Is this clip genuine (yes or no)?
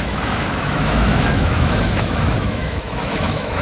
no